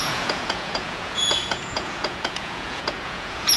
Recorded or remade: remade